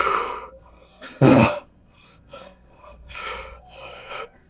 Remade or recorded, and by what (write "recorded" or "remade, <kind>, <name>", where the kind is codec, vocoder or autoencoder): remade, codec, SNAC